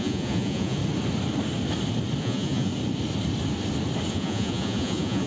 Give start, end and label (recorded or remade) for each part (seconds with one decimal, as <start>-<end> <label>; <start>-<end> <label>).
0.0-0.8 remade; 0.8-2.2 recorded; 2.2-2.7 remade; 2.7-4.1 recorded; 4.1-5.3 remade